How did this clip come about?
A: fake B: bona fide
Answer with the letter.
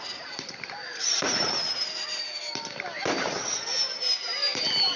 B